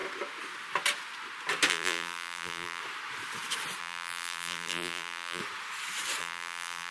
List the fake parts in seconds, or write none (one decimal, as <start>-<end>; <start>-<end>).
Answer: 1.7-2.8; 3.8-5.4; 6.2-6.9